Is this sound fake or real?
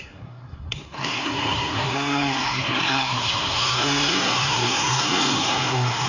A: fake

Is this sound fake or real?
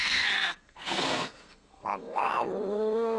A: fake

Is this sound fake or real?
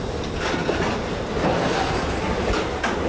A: real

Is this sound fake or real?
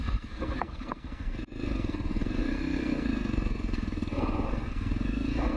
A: fake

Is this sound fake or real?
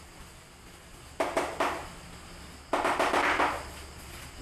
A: real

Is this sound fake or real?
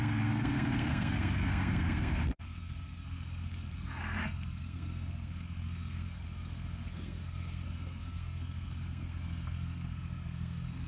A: fake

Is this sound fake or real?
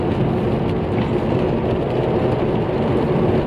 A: real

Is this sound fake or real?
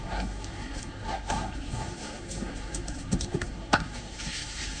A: fake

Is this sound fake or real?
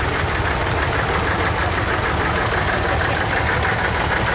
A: real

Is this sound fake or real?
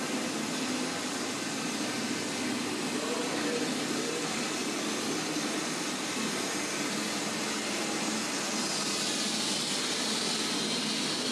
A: real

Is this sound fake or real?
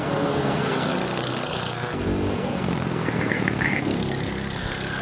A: fake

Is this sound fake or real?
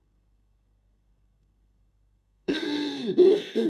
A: fake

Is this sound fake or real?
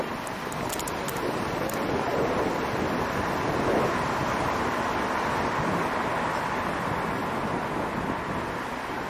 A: real